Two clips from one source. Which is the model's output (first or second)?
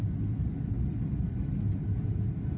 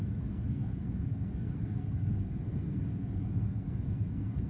second